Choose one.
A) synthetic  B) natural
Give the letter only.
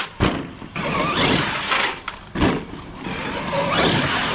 B